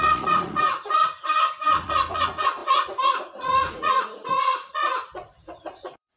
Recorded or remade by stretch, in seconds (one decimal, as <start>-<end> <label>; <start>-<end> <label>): 0.0-6.2 remade